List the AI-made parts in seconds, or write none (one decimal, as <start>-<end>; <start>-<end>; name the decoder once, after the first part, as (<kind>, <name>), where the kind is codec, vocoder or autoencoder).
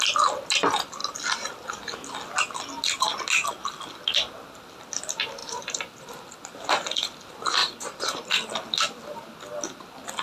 5.4-6.2 (vocoder, BigVGAN v2); 7.6-8.3